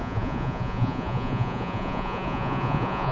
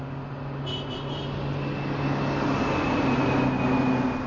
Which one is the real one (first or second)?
second